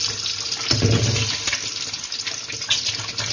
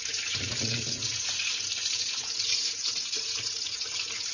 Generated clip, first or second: second